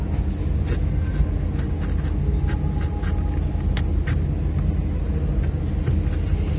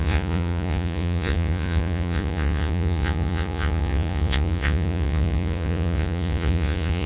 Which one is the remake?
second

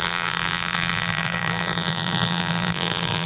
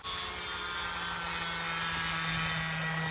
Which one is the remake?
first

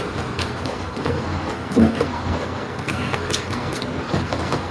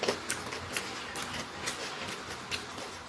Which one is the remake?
first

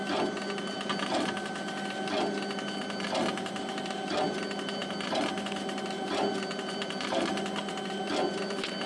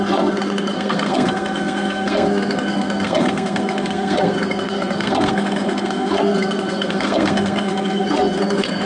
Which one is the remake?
second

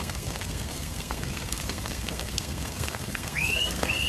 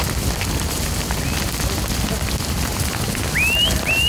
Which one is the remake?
first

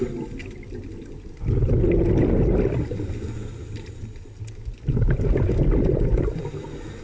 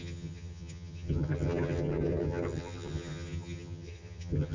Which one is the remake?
second